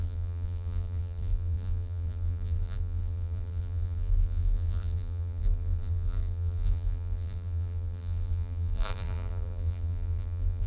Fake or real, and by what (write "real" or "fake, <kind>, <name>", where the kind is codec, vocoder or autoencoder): fake, vocoder, BigVGAN v2